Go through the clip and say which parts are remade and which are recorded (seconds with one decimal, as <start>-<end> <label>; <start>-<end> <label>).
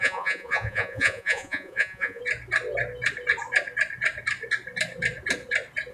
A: 0.0-2.2 remade; 2.2-5.9 recorded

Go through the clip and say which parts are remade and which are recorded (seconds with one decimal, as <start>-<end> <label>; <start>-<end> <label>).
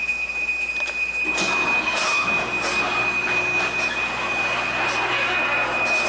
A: 0.0-6.1 recorded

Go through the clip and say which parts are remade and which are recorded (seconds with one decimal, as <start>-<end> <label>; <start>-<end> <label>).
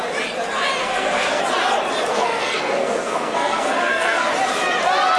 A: 0.0-0.8 recorded; 0.8-1.4 remade; 1.4-2.1 recorded; 2.1-4.3 remade; 4.3-5.2 recorded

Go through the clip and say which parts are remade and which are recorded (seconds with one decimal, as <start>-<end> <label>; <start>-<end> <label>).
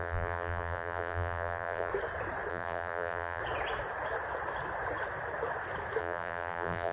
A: 0.0-1.9 remade; 1.9-2.5 recorded; 2.5-3.4 remade; 3.4-6.0 recorded; 6.0-6.9 remade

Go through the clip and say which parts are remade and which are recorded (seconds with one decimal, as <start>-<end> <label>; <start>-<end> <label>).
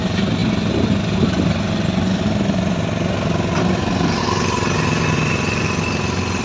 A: 0.0-6.4 recorded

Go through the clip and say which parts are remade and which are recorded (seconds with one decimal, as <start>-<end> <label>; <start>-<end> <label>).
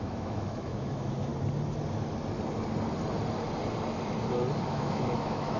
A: 0.0-1.3 remade; 1.3-4.7 recorded; 4.7-5.6 remade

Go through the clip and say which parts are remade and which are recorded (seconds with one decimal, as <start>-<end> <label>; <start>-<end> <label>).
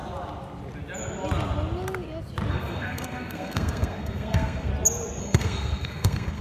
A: 0.0-2.5 recorded; 2.5-4.7 remade; 4.7-5.2 recorded; 5.2-6.4 remade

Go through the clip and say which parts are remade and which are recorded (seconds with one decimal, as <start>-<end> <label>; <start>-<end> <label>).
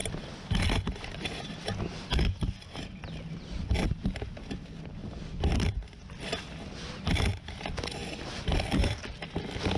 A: 0.0-0.5 remade; 0.5-5.0 recorded; 5.0-5.7 remade; 5.7-8.0 recorded; 8.0-9.2 remade; 9.2-9.8 recorded